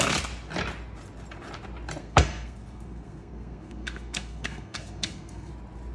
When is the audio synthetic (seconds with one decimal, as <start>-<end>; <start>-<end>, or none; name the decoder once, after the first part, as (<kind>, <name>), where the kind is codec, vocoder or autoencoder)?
2.0-5.5 (codec, SNAC)